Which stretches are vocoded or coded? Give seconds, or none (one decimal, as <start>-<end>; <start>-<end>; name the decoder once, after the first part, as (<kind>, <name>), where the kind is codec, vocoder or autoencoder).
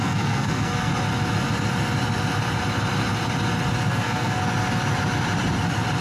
0.0-0.9 (codec, SNAC); 3.9-4.4